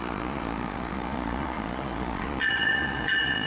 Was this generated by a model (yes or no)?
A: yes